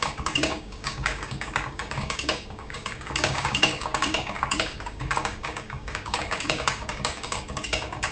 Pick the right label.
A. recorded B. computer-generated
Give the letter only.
B